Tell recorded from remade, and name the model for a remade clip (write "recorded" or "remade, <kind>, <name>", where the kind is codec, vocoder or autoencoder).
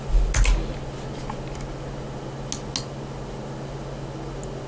recorded